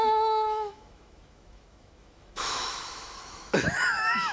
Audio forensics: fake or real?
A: fake